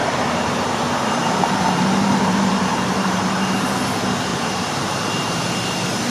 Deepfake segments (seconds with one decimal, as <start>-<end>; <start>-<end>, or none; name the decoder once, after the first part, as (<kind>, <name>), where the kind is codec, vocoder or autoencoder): 0.0-3.7 (vocoder, BigVGAN v2); 4.3-5.4